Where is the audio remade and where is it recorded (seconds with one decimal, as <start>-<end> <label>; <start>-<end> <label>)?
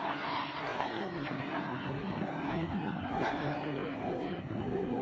0.0-5.0 remade